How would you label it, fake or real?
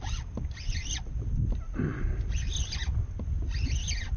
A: real